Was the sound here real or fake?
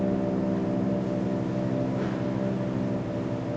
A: real